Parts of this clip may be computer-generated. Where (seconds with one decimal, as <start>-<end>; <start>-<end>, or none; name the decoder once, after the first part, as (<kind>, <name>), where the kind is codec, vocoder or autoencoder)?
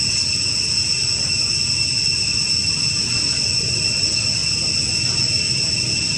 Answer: none